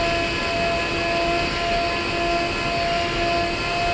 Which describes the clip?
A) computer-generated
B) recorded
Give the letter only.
B